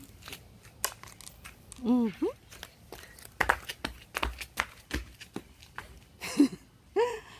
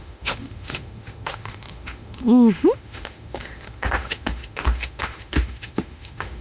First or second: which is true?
first